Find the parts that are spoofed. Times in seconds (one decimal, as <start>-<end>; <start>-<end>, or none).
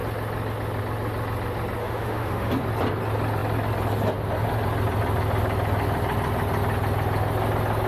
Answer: 1.8-2.5